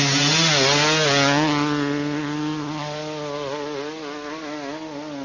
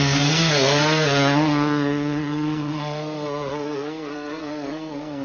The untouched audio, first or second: first